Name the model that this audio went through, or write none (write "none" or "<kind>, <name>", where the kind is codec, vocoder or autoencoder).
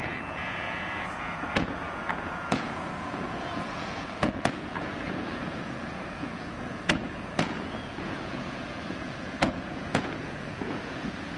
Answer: vocoder, Vocos